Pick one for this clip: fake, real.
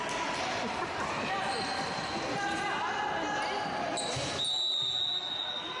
real